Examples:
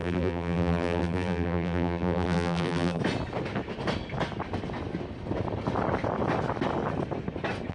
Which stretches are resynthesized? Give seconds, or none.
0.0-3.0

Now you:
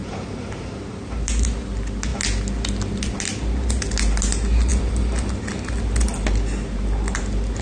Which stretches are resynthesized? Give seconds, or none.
0.0-0.6; 4.7-5.8